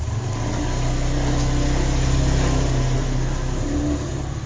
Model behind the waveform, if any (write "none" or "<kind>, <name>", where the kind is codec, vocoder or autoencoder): none